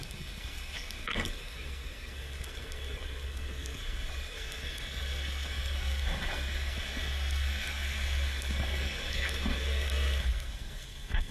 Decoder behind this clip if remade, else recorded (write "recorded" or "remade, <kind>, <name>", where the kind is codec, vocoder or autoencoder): remade, codec, SNAC